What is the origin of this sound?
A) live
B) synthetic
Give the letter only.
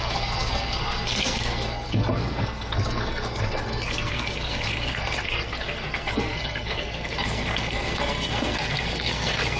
B